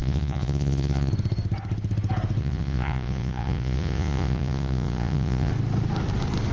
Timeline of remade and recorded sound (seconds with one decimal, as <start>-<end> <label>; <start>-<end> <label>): 0.0-1.1 remade; 1.1-2.4 recorded; 2.4-5.5 remade; 5.5-6.5 recorded

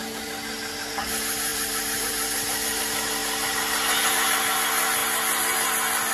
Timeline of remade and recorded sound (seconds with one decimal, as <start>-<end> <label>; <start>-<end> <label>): 0.0-6.1 recorded

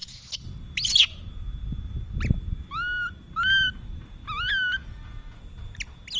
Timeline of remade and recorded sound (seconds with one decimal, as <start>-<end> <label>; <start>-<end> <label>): 0.0-4.8 recorded; 4.8-5.4 remade; 5.4-6.2 recorded

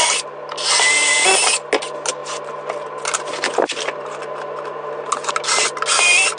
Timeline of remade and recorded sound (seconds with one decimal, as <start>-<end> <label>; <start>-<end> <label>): 0.0-6.4 recorded

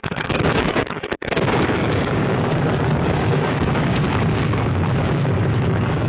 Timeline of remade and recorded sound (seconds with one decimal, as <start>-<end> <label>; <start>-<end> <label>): 0.0-6.1 remade

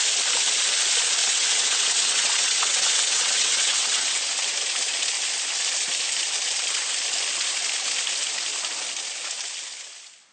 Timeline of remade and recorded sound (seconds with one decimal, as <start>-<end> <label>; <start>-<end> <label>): 0.0-1.2 recorded; 1.2-4.3 remade; 4.3-10.3 recorded

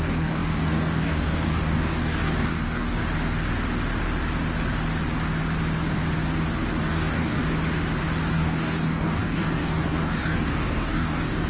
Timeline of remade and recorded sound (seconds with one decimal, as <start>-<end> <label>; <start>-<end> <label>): 0.0-3.0 remade; 3.0-6.8 recorded; 6.8-7.4 remade; 7.4-8.3 recorded; 8.3-11.5 remade